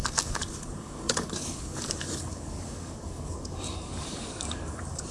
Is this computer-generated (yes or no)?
yes